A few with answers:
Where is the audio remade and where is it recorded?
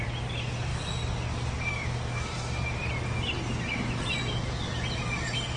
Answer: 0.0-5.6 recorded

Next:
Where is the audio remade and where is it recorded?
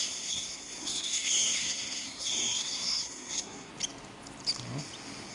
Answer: 0.0-3.7 remade; 3.7-5.3 recorded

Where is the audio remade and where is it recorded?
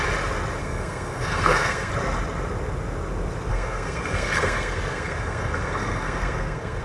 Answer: 0.0-0.6 recorded; 0.6-1.9 remade; 1.9-3.5 recorded; 3.5-6.8 remade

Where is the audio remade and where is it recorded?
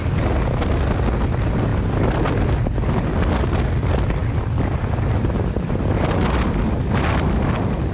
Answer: 0.0-1.7 recorded; 1.7-3.1 remade; 3.1-4.2 recorded; 4.2-6.0 remade; 6.0-7.9 recorded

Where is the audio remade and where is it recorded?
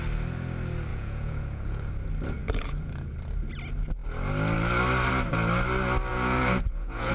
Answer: 0.0-0.9 recorded; 0.9-1.9 remade; 1.9-2.4 recorded; 2.4-3.1 remade; 3.1-6.1 recorded; 6.1-7.1 remade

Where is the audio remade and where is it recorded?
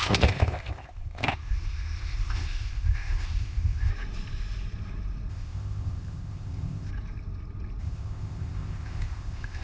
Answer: 0.0-3.9 remade; 3.9-5.3 recorded; 5.3-6.9 remade; 6.9-7.8 recorded; 7.8-9.6 remade